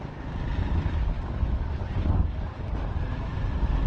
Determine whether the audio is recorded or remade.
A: recorded